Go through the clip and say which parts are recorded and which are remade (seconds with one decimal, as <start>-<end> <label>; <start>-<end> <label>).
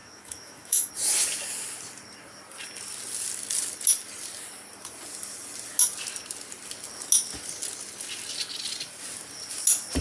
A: 0.0-0.9 remade; 0.9-10.0 recorded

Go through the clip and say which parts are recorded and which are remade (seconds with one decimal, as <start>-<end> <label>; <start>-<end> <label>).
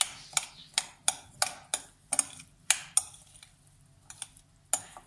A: 0.0-5.1 recorded